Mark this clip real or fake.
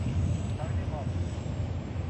real